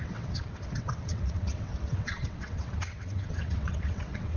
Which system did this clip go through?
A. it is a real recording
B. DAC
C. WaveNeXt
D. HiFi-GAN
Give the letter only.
C